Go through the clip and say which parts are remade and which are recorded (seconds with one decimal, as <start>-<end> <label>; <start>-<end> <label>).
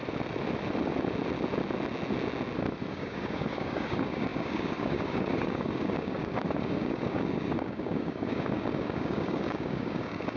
0.0-2.9 recorded; 2.9-10.4 remade